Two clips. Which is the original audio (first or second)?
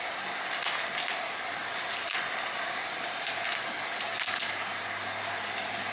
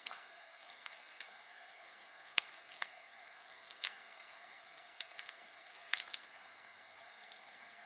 first